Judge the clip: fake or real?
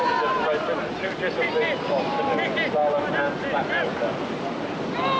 real